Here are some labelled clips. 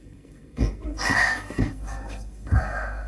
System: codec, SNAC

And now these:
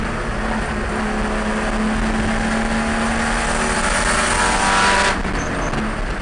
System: none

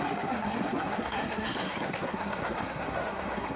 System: codec, SNAC